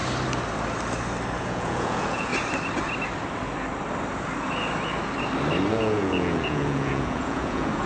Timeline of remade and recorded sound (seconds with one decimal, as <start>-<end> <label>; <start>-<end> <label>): 0.0-1.4 recorded; 1.4-2.3 remade; 2.3-5.7 recorded; 5.7-7.9 remade